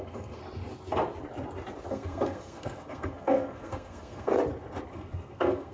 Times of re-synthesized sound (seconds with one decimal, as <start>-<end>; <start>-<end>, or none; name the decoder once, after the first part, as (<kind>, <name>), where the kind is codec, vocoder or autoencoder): 0.0-0.4 (codec, SNAC); 1.9-4.3; 4.9-5.7